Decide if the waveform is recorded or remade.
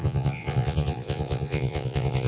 remade